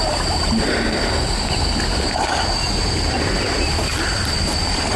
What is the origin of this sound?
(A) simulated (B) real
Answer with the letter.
B